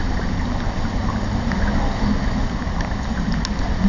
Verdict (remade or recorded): recorded